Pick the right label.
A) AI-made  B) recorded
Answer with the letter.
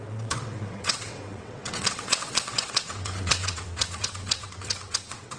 A